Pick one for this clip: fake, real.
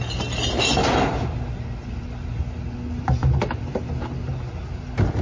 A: real